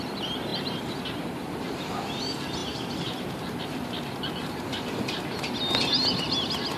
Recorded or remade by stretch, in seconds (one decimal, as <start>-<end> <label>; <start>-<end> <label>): 0.0-2.6 recorded; 2.6-3.6 remade; 3.6-6.8 recorded